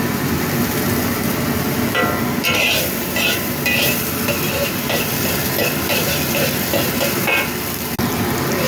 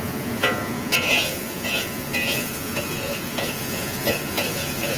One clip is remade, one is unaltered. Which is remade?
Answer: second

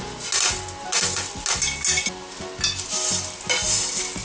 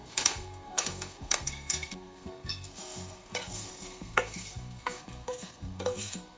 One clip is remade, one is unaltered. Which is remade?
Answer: second